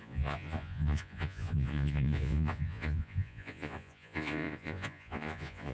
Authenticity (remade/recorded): remade